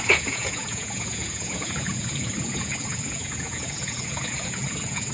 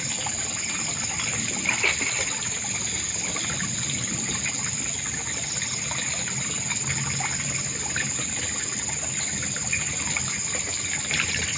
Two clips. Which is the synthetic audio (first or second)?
first